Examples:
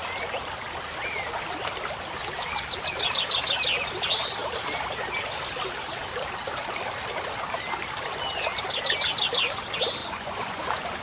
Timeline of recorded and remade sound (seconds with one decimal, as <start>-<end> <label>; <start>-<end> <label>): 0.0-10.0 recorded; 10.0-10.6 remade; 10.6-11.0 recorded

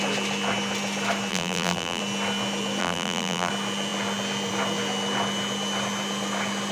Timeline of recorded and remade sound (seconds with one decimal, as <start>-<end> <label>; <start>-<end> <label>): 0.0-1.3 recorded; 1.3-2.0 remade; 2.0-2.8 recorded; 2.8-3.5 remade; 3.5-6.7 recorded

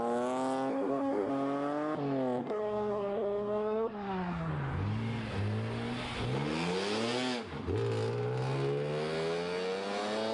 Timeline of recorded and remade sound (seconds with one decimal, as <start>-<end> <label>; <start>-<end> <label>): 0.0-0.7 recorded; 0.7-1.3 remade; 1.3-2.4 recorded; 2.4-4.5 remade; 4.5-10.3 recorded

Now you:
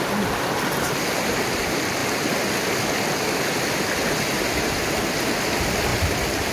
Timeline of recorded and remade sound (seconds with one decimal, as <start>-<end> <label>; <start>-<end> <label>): 0.0-6.5 recorded

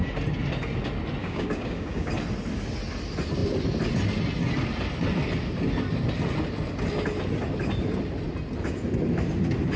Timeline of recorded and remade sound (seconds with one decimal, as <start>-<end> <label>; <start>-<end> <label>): 0.0-1.2 recorded; 1.2-2.1 remade; 2.1-9.8 recorded

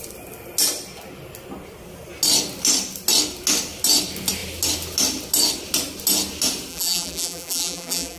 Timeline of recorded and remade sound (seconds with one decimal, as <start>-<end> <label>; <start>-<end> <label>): 0.0-6.7 recorded; 6.7-8.2 remade

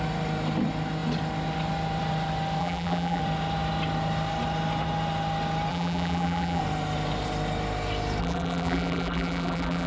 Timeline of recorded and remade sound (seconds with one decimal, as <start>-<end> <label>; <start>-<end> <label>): 0.0-2.6 recorded; 2.6-3.2 remade; 3.2-5.7 recorded; 5.7-6.6 remade; 6.6-8.2 recorded; 8.2-9.9 remade

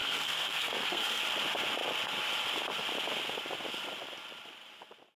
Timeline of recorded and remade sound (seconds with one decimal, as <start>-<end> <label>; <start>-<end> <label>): 0.0-1.2 remade; 1.2-5.2 recorded